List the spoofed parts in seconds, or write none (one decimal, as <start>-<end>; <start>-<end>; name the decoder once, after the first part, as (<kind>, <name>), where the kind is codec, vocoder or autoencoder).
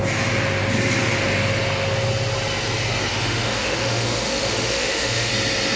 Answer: 3.1-5.3 (autoencoder, DAC-VAE)